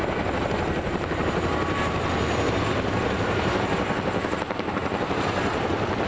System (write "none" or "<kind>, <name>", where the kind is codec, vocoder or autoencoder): none